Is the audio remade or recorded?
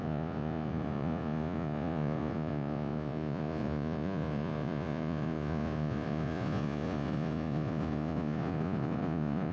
remade